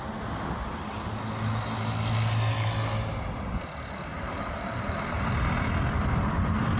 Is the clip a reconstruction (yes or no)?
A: no